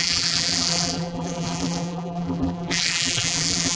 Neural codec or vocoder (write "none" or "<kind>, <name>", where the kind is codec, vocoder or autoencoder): vocoder, BigVGAN v2